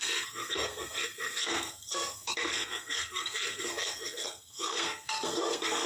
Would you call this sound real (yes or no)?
no